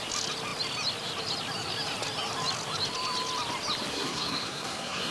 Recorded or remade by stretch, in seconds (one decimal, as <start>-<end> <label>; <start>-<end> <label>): 0.0-3.9 recorded; 3.9-5.1 remade